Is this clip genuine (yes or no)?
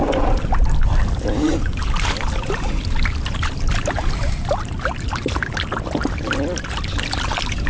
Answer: yes